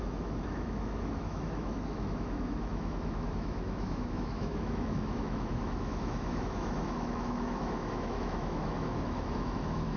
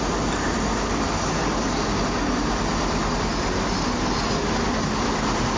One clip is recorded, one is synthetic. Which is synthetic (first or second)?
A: first